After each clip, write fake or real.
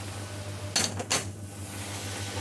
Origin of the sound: real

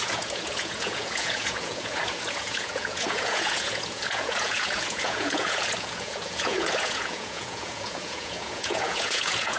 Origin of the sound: fake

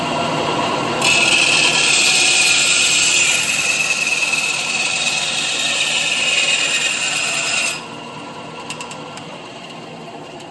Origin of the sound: real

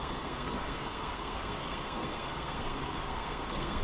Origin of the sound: fake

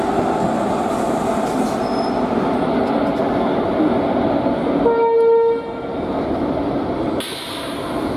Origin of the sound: real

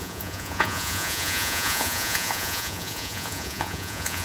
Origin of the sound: fake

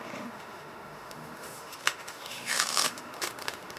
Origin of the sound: fake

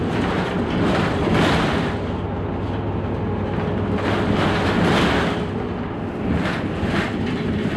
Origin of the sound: real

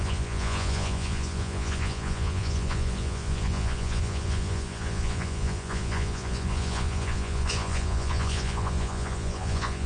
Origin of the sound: fake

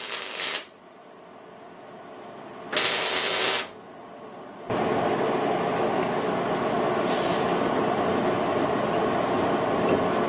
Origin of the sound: real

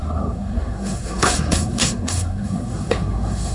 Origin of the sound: fake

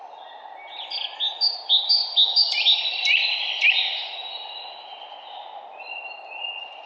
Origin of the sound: real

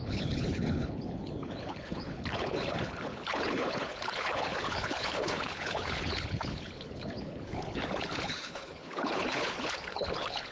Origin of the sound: fake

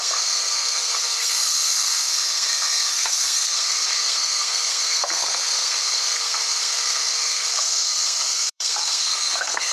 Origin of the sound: fake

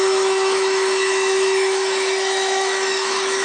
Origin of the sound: fake